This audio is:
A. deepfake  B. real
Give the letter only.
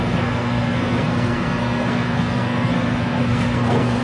A